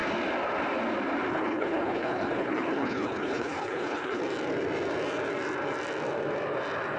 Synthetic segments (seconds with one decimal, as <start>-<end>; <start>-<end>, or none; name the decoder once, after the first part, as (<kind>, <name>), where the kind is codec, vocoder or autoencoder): 1.3-4.2 (codec, HILCodec)